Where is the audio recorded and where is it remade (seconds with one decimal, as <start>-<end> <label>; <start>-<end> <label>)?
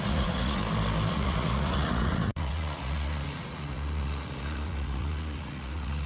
0.0-0.6 remade; 0.6-1.1 recorded; 1.1-6.1 remade